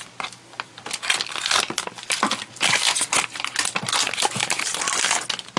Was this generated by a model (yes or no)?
no